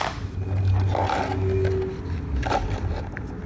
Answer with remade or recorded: recorded